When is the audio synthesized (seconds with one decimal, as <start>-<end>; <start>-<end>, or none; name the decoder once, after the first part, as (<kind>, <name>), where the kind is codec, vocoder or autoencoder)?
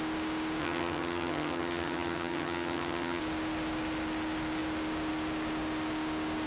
0.6-3.2 (vocoder, HiFi-GAN)